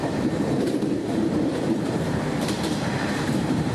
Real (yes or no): no